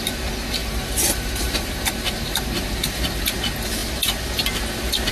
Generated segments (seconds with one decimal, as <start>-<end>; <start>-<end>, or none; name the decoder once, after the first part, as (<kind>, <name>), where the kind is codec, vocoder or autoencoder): 0.6-3.2 (vocoder, BigVGAN v2)